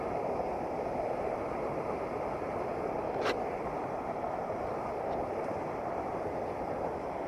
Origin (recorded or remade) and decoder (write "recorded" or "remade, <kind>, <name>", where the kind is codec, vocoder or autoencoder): recorded